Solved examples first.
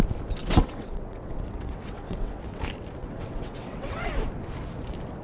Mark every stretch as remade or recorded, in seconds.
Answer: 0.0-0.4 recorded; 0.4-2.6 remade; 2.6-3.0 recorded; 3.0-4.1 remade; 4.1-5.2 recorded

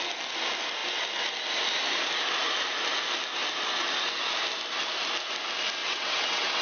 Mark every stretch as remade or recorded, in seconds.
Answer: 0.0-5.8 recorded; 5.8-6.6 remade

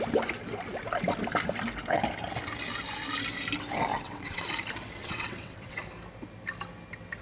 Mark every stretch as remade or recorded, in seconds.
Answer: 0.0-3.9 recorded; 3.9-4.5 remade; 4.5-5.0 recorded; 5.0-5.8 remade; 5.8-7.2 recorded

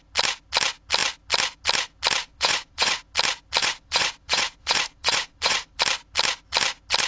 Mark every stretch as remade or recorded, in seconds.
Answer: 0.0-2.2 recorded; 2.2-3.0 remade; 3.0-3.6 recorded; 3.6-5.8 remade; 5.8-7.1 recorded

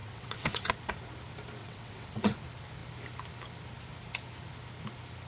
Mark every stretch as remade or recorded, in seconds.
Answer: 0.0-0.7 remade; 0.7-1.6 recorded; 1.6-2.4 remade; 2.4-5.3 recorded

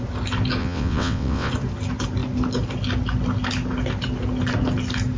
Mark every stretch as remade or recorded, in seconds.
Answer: 0.0-0.6 recorded; 0.6-1.5 remade; 1.5-5.2 recorded

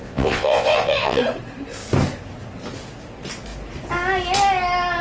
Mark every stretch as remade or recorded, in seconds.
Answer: 0.0-1.2 remade; 1.2-5.0 recorded